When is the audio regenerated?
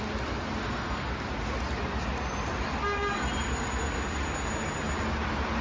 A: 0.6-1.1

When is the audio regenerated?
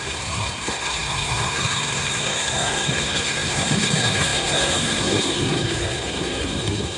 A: 0.0-7.0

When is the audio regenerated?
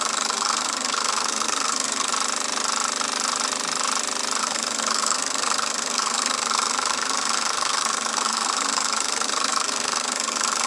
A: 0.0-2.1; 4.4-10.7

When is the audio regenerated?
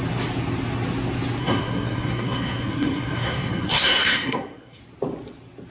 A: 1.4-4.8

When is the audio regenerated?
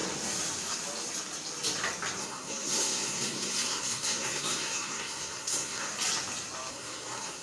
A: 2.2-5.9; 6.7-7.4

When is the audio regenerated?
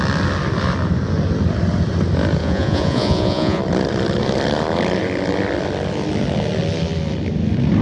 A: 2.4-3.6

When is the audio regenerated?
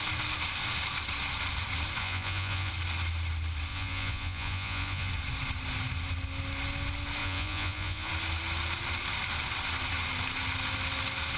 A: 2.0-2.7; 3.7-5.1; 7.2-8.1